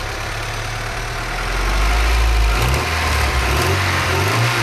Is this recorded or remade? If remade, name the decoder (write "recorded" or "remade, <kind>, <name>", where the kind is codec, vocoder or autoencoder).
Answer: recorded